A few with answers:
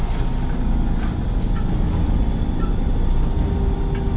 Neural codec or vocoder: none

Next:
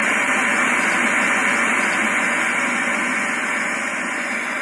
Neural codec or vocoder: vocoder, Vocos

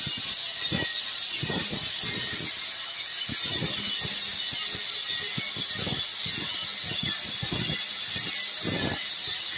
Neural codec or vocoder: none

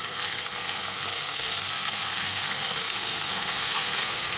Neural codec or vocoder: codec, SNAC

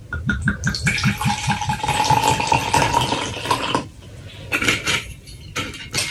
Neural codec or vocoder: none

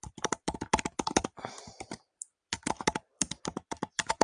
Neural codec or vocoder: vocoder, BigVGAN v2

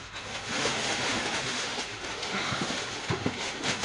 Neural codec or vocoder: autoencoder, DAC-VAE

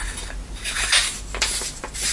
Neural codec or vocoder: none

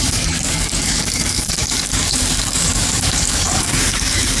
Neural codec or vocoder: codec, DAC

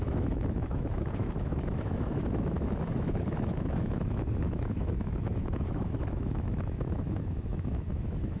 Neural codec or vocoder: autoencoder, DAC-VAE